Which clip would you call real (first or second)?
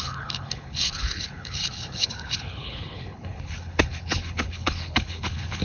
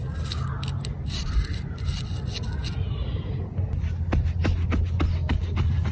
second